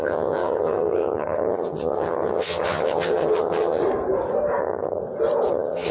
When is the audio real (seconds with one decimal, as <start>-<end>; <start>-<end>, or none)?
3.8-4.6; 5.0-5.5